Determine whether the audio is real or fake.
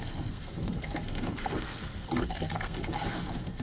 fake